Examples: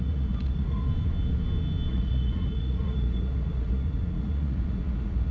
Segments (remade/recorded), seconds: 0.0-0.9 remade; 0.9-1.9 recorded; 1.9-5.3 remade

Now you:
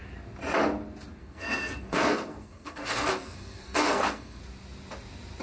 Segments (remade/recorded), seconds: 0.0-1.2 recorded; 1.2-4.4 remade; 4.4-5.4 recorded

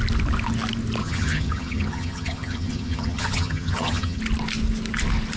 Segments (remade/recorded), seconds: 0.0-1.0 recorded; 1.0-4.2 remade; 4.2-5.4 recorded

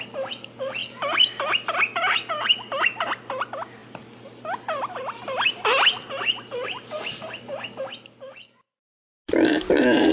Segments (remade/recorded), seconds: 0.0-10.1 recorded

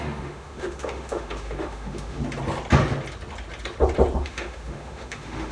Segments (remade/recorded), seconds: 0.0-2.2 remade; 2.2-4.2 recorded; 4.2-5.5 remade